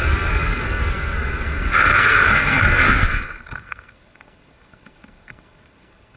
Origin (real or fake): fake